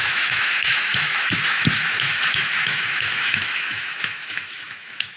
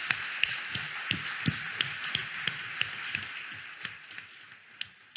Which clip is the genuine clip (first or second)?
second